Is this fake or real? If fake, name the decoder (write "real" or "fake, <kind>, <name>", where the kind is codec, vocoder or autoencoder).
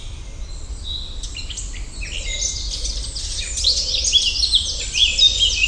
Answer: real